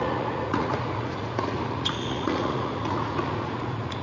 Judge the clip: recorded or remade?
remade